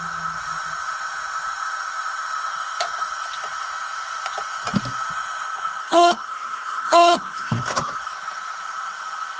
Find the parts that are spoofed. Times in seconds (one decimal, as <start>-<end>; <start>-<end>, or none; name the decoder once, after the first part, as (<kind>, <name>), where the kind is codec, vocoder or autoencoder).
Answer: 5.8-8.0 (codec, SNAC)